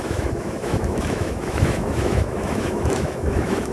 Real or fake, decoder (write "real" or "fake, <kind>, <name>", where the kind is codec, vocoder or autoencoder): fake, autoencoder, DAC-VAE